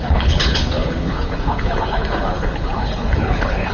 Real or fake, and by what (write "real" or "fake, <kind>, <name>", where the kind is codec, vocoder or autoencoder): fake, codec, HILCodec